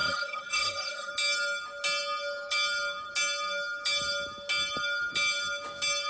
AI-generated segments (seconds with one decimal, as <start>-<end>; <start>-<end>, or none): 0.0-1.1